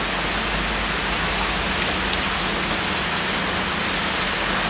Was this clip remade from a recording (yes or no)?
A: no